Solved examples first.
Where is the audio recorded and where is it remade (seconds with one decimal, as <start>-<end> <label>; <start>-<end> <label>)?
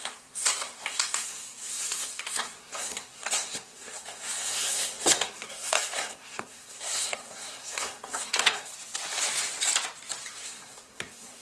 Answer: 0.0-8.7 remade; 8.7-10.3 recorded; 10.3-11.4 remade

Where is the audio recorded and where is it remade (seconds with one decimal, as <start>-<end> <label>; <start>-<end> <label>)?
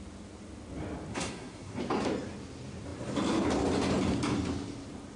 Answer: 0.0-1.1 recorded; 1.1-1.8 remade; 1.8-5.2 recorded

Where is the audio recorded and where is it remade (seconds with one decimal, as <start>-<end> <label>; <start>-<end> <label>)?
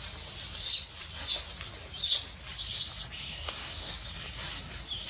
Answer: 0.0-3.2 recorded; 3.2-3.9 remade; 3.9-5.1 recorded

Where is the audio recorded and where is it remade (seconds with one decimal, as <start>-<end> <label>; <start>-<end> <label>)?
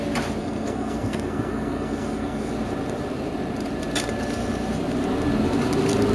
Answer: 0.0-0.4 recorded; 0.4-2.5 remade; 2.5-6.1 recorded